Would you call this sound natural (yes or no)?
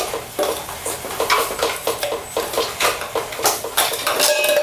yes